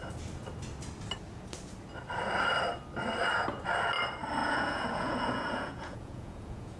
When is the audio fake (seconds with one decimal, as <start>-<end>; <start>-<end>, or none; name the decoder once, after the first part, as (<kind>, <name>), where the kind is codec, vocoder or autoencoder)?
4.4-6.8 (vocoder, Vocos)